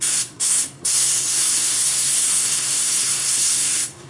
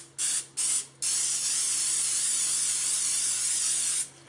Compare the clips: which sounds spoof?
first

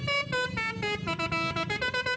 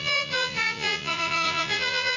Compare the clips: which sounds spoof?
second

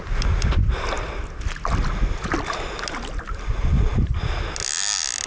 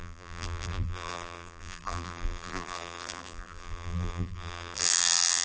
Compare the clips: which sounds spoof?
second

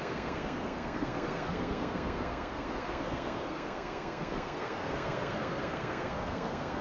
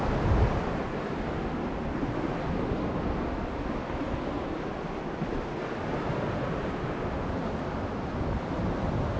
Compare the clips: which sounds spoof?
first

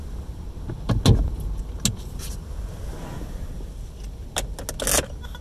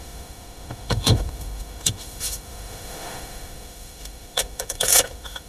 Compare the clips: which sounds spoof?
second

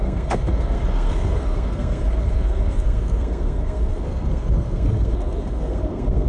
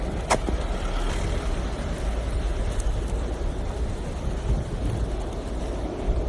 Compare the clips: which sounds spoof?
first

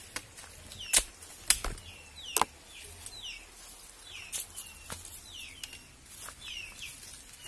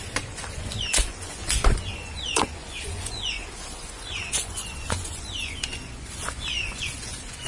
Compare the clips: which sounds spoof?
second